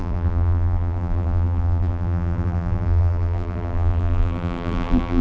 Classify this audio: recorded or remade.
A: remade